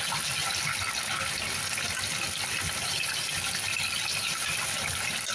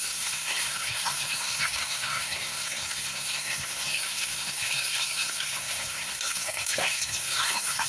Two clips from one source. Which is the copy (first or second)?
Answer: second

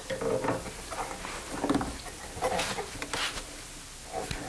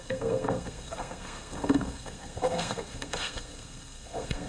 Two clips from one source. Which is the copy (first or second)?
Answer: second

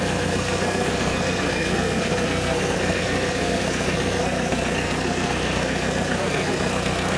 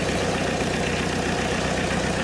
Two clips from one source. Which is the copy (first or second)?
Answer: first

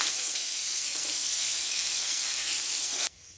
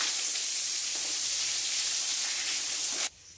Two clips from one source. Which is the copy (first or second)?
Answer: first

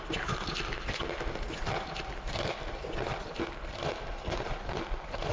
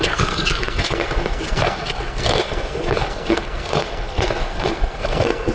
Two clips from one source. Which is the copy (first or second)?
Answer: second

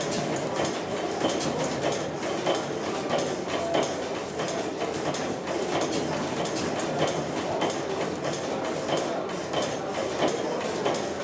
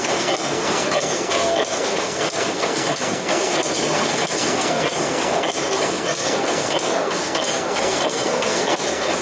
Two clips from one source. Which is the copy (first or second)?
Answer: second